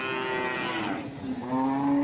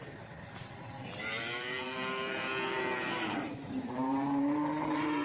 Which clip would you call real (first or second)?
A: first